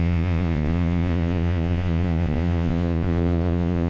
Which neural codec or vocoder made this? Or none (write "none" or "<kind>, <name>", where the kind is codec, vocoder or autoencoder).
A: vocoder, Vocos